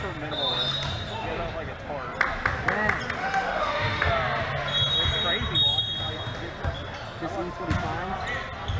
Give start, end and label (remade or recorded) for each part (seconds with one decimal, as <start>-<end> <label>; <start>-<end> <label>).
0.0-3.2 recorded; 3.2-4.1 remade; 4.1-8.8 recorded